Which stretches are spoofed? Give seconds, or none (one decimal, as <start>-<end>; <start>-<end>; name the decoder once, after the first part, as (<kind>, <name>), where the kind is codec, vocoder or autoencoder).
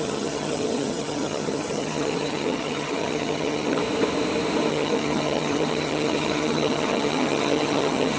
0.0-3.8 (vocoder, HiFi-GAN); 4.7-8.2